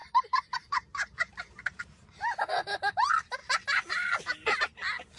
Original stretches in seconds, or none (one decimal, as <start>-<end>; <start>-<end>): 2.2-3.4; 4.1-5.2